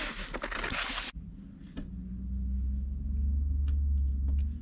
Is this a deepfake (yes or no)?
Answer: no